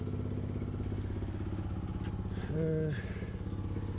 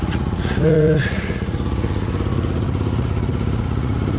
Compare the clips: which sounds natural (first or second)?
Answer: first